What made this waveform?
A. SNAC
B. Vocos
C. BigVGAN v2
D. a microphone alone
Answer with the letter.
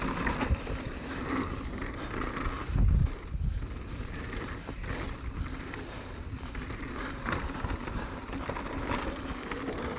D